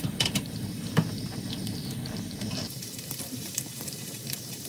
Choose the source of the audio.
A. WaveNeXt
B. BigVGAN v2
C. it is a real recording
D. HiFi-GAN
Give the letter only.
B